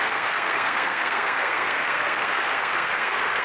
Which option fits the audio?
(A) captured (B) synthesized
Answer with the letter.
B